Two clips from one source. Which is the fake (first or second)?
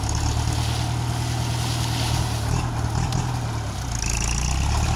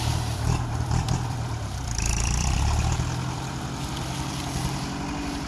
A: second